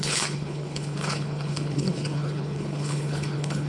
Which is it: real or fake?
fake